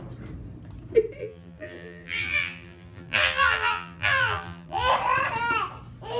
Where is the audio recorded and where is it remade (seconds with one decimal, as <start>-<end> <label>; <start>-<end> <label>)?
0.0-1.2 recorded; 1.2-4.9 remade; 4.9-6.2 recorded